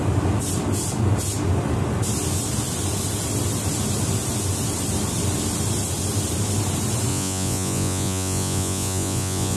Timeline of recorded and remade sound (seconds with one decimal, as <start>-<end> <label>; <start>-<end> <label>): 0.0-7.1 recorded; 7.1-9.6 remade